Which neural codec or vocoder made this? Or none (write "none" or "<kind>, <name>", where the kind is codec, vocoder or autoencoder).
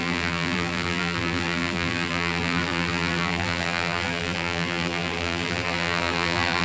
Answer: vocoder, BigVGAN v2